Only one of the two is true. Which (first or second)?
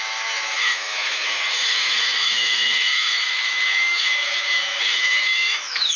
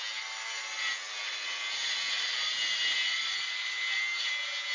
second